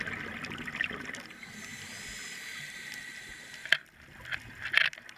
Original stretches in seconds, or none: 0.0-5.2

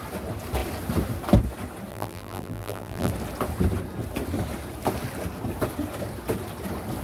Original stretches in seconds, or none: 0.0-1.9; 3.1-7.0

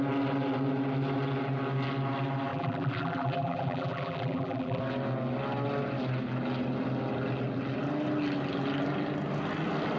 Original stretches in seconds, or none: 0.0-2.5; 4.8-10.0

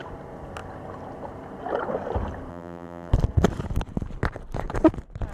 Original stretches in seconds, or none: 0.0-2.5; 3.1-5.3

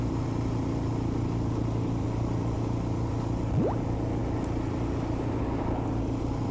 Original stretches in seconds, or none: 0.0-6.5